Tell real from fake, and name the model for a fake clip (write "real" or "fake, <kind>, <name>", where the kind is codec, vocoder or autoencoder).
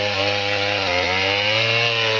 real